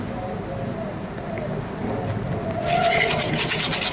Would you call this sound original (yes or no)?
yes